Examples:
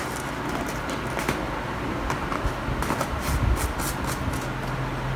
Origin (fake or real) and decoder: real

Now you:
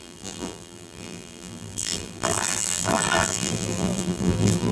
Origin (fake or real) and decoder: fake, vocoder, BigVGAN v2